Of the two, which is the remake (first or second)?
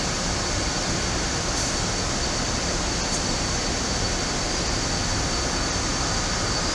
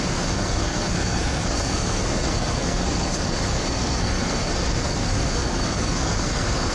second